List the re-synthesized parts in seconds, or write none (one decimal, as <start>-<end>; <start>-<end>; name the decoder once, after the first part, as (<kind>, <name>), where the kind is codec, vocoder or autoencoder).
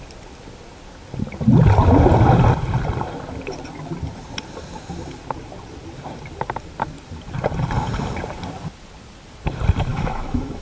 9.9-10.6 (autoencoder, DAC-VAE)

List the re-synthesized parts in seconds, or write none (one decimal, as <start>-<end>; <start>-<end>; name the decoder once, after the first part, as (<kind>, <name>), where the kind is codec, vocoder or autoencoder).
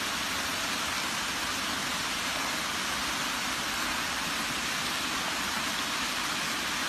none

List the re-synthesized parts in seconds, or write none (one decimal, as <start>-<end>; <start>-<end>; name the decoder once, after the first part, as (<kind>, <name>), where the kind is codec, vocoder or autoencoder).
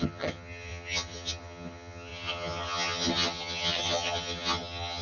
0.0-5.0 (vocoder, HiFi-GAN)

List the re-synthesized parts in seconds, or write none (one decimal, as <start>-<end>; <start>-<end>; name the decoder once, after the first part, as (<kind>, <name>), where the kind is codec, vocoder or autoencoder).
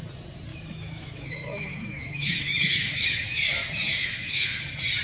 0.5-3.4 (autoencoder, DAC-VAE); 4.0-4.6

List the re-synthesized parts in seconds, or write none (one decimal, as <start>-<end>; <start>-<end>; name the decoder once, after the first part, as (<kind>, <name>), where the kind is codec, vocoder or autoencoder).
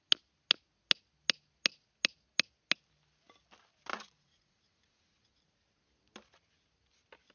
3.9-5.4 (vocoder, Vocos)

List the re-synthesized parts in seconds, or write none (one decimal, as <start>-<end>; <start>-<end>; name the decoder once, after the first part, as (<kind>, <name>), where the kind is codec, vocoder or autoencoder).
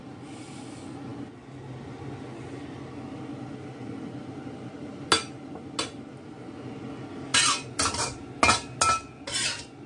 none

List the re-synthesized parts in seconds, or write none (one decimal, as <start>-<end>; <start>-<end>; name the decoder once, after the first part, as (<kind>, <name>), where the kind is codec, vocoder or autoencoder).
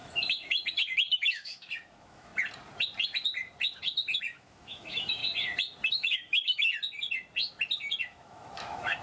0.0-2.3 (autoencoder, DAC-VAE); 4.2-5.2; 5.9-6.7; 8.0-9.0